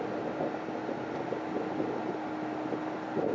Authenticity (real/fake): real